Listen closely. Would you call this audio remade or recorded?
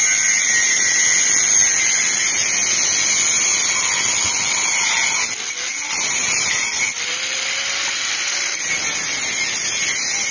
recorded